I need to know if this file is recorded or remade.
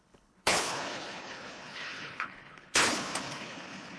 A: remade